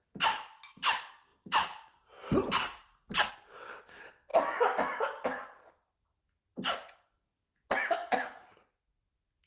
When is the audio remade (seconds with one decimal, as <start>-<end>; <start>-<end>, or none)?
1.3-3.3